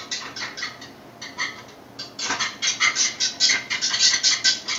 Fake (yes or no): no